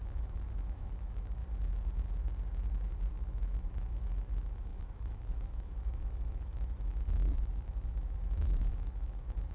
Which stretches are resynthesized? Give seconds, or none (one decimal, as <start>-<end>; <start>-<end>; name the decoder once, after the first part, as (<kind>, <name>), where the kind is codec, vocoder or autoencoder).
0.0-1.4 (autoencoder, DAC-VAE); 3.1-9.5